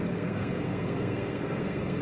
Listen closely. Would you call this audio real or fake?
fake